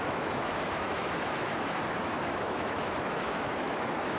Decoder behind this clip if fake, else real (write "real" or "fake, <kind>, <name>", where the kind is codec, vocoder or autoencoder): fake, autoencoder, DAC-VAE